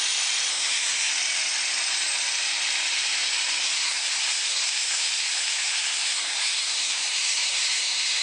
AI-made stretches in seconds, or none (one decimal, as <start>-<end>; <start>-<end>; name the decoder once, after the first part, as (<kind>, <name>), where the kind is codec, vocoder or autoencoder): 0.5-1.1 (codec, SNAC); 3.6-8.2